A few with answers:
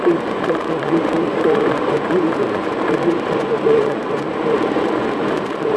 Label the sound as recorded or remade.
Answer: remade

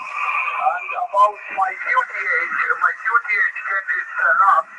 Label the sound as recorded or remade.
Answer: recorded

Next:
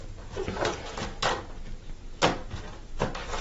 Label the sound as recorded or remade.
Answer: recorded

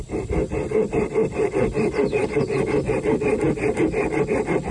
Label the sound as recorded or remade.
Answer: recorded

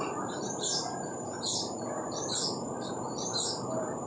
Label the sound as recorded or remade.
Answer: remade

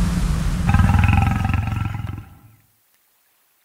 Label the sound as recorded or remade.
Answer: recorded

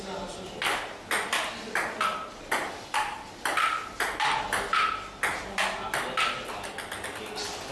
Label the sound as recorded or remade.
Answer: recorded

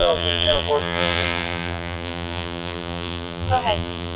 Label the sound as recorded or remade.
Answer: remade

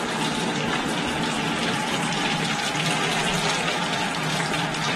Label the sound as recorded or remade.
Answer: recorded